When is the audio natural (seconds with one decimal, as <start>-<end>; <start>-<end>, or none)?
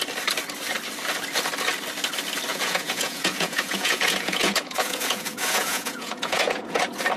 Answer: 0.0-2.5; 6.8-7.2